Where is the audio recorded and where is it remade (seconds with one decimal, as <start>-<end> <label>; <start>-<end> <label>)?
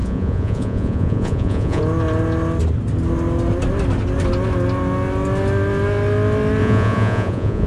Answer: 0.0-1.8 remade; 1.8-6.6 recorded; 6.6-7.7 remade